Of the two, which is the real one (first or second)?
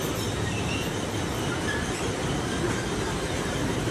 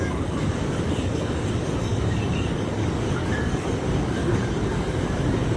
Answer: first